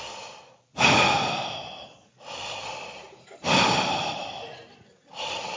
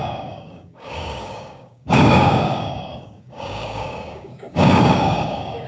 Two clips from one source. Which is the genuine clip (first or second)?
first